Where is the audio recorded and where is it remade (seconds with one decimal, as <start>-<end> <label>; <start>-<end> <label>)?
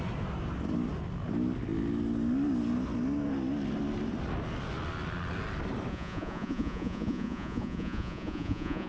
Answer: 0.0-5.9 recorded; 5.9-8.9 remade